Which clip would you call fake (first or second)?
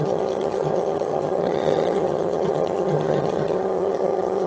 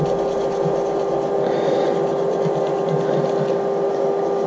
first